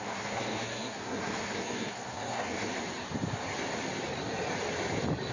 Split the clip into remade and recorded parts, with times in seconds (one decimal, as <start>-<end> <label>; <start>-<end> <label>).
0.0-2.7 remade; 2.7-5.3 recorded